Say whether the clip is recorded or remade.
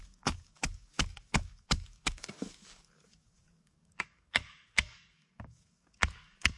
remade